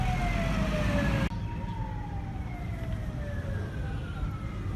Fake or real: real